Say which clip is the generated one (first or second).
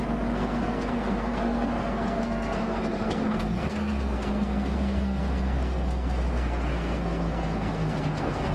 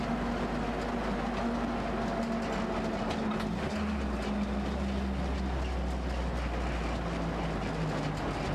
first